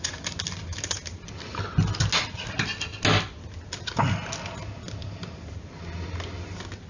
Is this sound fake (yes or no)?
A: no